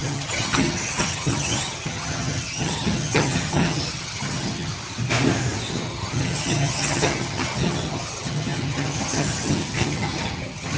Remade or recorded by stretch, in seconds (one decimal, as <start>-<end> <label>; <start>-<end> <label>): 0.0-4.7 remade; 4.7-5.7 recorded; 5.7-10.8 remade